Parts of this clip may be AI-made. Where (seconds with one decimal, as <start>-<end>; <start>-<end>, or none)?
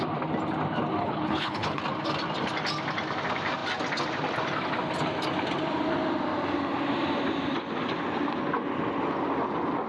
1.0-1.8